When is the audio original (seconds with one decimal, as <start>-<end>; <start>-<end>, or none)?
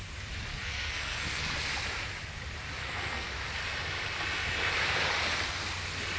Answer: 0.0-0.5; 1.4-2.8; 3.3-6.2